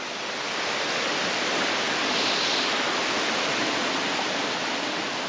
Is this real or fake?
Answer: fake